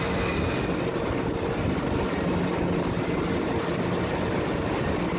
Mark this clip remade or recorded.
recorded